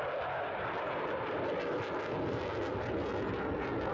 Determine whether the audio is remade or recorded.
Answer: recorded